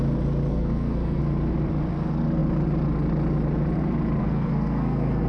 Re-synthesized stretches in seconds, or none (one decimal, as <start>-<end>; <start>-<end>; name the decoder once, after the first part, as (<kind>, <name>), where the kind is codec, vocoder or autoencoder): 0.5-1.2 (codec, SNAC); 4.2-5.3